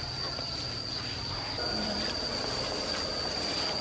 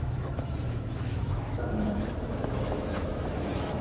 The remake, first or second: second